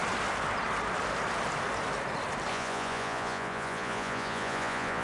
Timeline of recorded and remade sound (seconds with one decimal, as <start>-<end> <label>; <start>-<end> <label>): 0.0-2.5 recorded; 2.5-5.0 remade